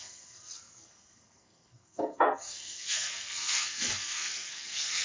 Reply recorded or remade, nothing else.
remade